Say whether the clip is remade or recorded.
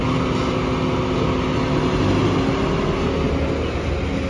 recorded